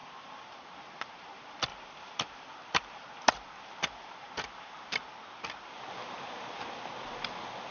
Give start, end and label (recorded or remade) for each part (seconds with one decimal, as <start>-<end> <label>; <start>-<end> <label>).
0.0-0.5 remade; 0.5-1.7 recorded; 1.7-3.0 remade; 3.0-7.7 recorded